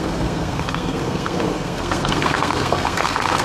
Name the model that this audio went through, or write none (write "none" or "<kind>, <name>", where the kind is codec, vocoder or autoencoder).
codec, SNAC